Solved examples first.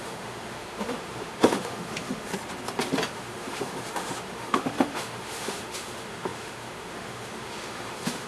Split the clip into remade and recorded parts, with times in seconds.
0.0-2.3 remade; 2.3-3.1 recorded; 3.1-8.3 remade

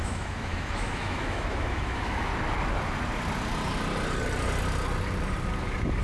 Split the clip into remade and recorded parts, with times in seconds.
0.0-2.3 remade; 2.3-6.0 recorded

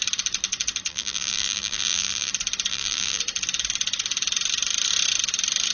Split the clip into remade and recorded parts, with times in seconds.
0.0-0.9 recorded; 0.9-2.3 remade; 2.3-2.7 recorded; 2.7-3.2 remade; 3.2-5.7 recorded

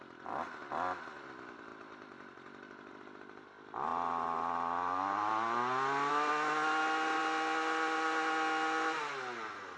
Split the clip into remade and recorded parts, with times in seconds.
0.0-9.8 recorded

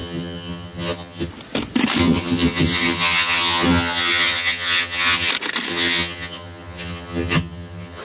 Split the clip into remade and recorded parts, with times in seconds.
0.0-1.3 remade; 1.3-2.0 recorded; 2.0-5.3 remade; 5.3-5.7 recorded; 5.7-8.0 remade